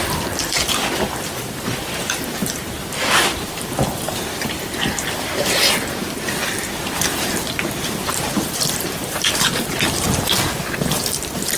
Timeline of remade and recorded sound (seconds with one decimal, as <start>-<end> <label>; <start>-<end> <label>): 0.0-2.4 remade; 2.4-3.5 recorded; 3.5-11.6 remade

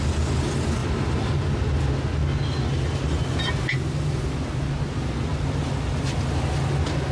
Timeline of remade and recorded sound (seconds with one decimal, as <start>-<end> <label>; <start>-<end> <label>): 0.0-0.8 recorded; 0.8-1.3 remade; 1.3-5.3 recorded; 5.3-6.0 remade; 6.0-7.1 recorded

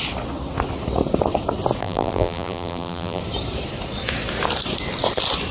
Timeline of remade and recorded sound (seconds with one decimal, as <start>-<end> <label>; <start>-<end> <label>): 0.0-1.8 recorded; 1.8-3.2 remade; 3.2-5.5 recorded

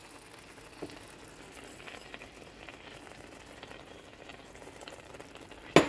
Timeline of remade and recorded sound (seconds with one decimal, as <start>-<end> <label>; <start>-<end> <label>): 0.0-4.3 recorded; 4.3-5.1 remade; 5.1-5.9 recorded

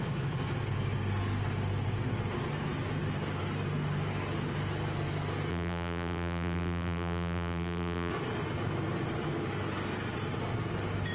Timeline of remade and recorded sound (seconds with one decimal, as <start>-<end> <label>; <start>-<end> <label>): 0.0-5.5 recorded; 5.5-8.1 remade; 8.1-11.1 recorded

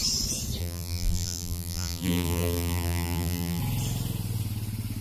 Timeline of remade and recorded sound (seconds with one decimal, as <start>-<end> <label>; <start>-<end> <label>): 0.0-0.6 recorded; 0.6-3.6 remade; 3.6-5.0 recorded

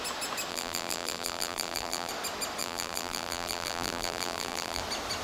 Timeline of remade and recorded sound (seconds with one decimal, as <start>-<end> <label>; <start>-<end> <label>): 0.0-0.5 recorded; 0.5-2.1 remade; 2.1-2.6 recorded; 2.6-4.8 remade; 4.8-5.2 recorded

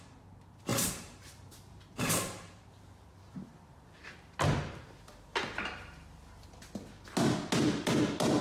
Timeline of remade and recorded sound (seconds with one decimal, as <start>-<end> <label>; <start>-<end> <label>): 0.0-0.7 recorded; 0.7-2.7 remade; 2.7-8.4 recorded